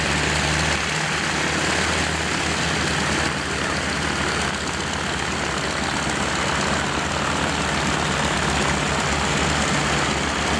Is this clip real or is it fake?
real